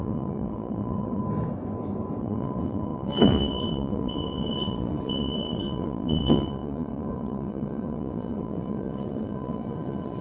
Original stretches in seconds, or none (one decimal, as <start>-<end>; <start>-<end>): 1.2-2.2